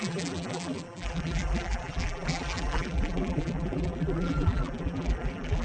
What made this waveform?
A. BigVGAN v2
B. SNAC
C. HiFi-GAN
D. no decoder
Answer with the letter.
A